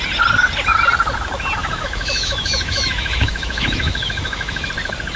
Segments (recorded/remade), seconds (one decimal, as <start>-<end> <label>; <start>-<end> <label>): 0.0-1.6 recorded; 1.6-4.7 remade; 4.7-5.2 recorded